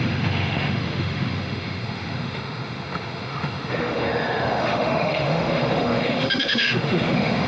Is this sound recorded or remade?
remade